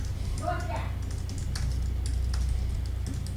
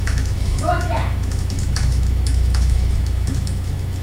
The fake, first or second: second